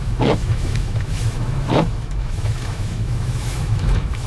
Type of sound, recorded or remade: remade